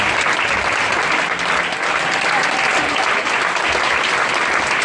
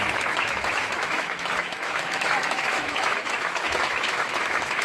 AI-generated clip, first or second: second